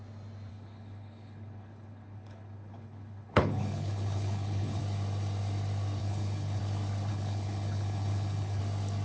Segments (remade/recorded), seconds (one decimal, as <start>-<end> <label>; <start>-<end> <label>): 0.0-0.5 recorded; 0.5-4.8 remade; 4.8-6.0 recorded; 6.0-6.6 remade; 6.6-7.1 recorded; 7.1-8.6 remade; 8.6-9.0 recorded